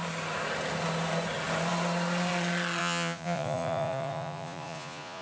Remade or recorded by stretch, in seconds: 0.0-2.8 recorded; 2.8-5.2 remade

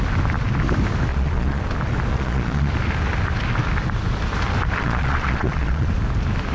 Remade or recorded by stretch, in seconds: 0.0-1.1 recorded; 1.1-1.6 remade; 1.6-2.1 recorded; 2.1-2.7 remade; 2.7-4.8 recorded; 4.8-5.9 remade; 5.9-6.5 recorded

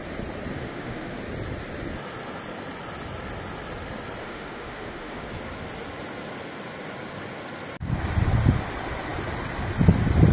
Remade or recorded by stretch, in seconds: 0.0-0.5 recorded; 0.5-1.2 remade; 1.2-4.2 recorded; 4.2-5.3 remade; 5.3-10.3 recorded

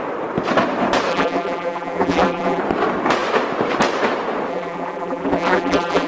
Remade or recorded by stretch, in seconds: 0.0-1.1 recorded; 1.1-2.6 remade; 2.6-4.5 recorded; 4.5-6.1 remade